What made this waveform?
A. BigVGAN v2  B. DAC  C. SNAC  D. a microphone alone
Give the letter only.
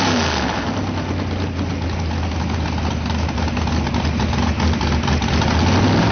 D